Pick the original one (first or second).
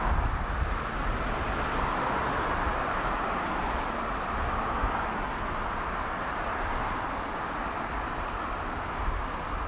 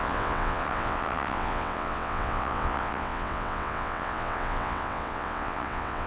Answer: first